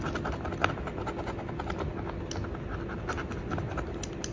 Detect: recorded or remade recorded